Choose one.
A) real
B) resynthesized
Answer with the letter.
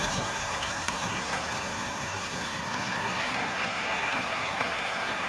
B